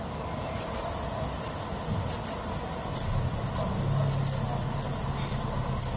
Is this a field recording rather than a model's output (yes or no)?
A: yes